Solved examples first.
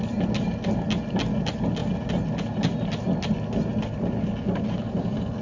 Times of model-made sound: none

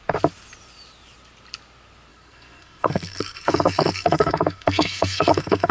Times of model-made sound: 2.1-5.7 (codec, SNAC)